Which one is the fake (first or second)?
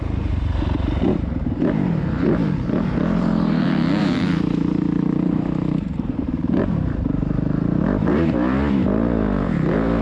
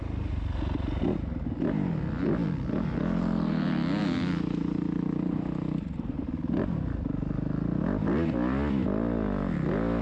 first